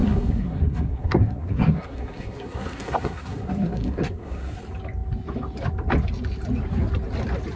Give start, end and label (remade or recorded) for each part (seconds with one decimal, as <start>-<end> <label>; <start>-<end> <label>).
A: 0.0-4.6 remade; 4.6-7.6 recorded